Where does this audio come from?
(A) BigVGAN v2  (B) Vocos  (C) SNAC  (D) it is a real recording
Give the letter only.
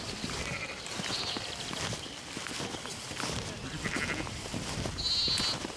D